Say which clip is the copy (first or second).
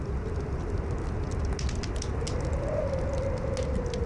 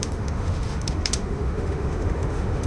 second